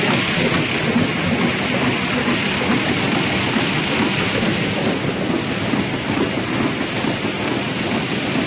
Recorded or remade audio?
recorded